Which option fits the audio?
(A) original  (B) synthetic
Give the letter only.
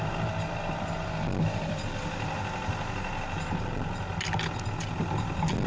A